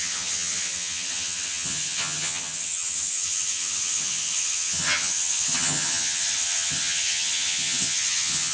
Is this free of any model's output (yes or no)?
no